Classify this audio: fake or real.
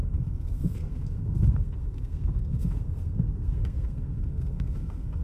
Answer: fake